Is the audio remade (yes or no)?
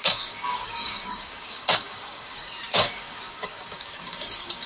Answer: yes